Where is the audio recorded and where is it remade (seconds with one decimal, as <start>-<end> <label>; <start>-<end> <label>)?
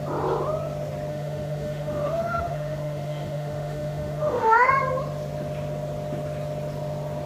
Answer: 0.0-1.1 recorded; 1.1-4.7 remade; 4.7-7.3 recorded